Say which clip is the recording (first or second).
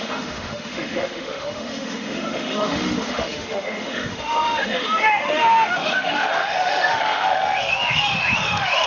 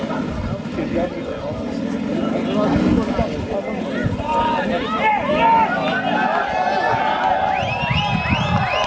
second